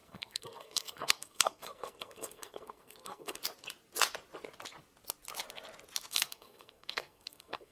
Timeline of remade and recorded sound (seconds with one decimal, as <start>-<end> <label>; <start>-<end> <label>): 0.0-3.4 remade; 3.4-6.1 recorded; 6.1-7.7 remade